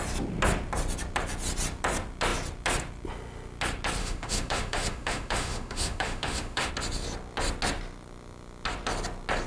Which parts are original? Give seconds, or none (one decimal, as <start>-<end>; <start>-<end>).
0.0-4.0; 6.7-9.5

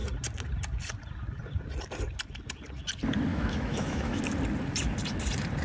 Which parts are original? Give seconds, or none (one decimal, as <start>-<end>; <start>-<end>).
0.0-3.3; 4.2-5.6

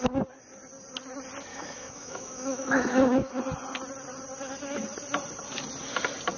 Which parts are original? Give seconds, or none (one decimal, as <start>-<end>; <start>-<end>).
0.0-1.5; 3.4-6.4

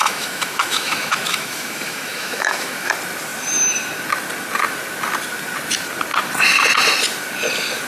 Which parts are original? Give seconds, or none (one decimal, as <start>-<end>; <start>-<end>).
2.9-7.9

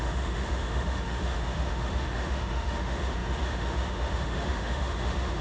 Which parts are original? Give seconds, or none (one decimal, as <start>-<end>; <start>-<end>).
none

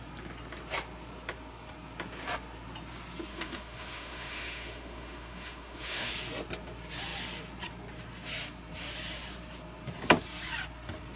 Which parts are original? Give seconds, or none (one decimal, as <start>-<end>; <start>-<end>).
0.0-3.3; 6.1-11.2

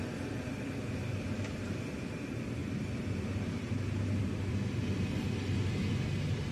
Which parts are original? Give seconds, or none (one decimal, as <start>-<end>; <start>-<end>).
0.0-6.5

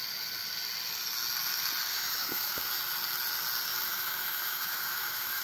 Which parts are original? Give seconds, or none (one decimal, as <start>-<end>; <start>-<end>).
0.0-1.9; 2.8-3.7